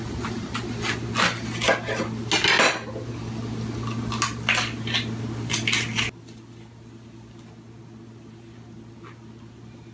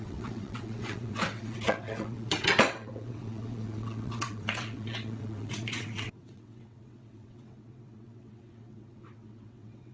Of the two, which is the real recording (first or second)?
first